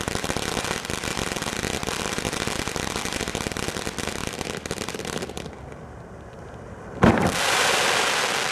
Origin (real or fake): real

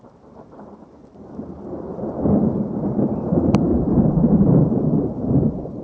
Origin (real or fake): fake